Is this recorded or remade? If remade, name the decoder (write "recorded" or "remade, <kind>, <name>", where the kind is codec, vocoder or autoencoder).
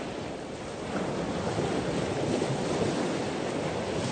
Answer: recorded